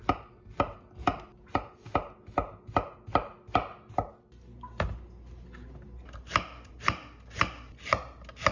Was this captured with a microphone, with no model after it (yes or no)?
yes